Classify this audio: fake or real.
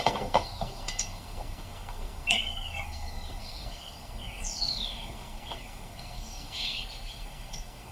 fake